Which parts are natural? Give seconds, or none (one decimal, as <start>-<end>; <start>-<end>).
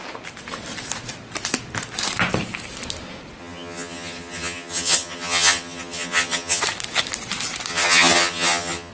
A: 0.0-3.4; 6.6-7.7